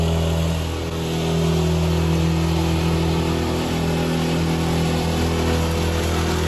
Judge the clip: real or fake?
real